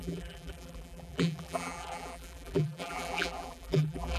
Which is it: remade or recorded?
remade